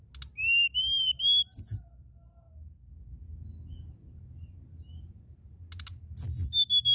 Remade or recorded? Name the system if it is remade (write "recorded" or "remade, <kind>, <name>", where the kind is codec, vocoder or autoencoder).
recorded